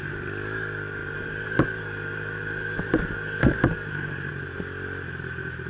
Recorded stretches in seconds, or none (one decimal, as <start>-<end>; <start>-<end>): 0.0-1.0; 4.3-5.7